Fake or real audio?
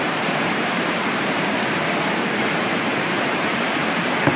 fake